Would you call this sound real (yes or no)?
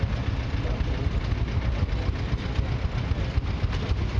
yes